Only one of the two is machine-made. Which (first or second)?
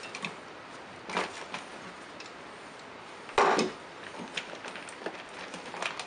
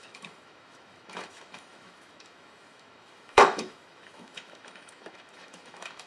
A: second